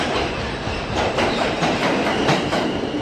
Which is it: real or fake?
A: fake